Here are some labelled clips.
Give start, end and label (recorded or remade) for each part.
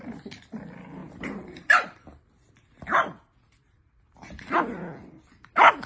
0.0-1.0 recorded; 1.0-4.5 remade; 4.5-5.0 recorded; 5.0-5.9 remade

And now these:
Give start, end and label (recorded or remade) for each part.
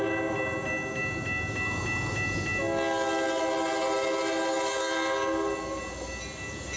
0.0-6.8 recorded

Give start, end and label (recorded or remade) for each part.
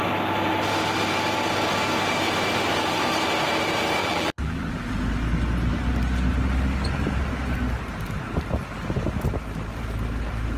0.0-4.0 recorded; 4.0-4.7 remade; 4.7-10.6 recorded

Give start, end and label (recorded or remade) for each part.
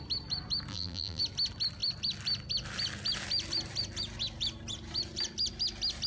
0.0-0.7 recorded; 0.7-1.2 remade; 1.2-6.1 recorded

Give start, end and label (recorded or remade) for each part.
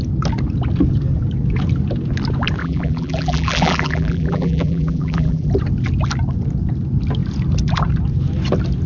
0.0-2.6 recorded; 2.6-5.5 remade; 5.5-8.9 recorded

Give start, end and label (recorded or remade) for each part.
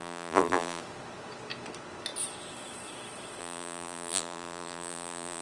0.0-0.8 remade; 0.8-3.4 recorded; 3.4-5.4 remade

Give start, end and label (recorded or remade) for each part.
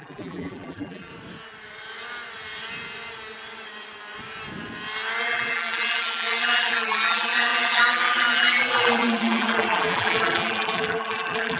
0.0-1.1 remade; 1.1-5.2 recorded; 5.2-11.6 remade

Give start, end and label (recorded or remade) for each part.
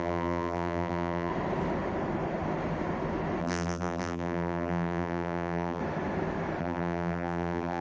0.0-1.3 remade; 1.3-3.4 recorded; 3.4-5.8 remade; 5.8-6.6 recorded; 6.6-7.8 remade